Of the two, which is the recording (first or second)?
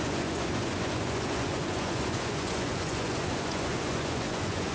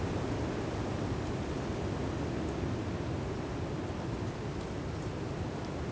second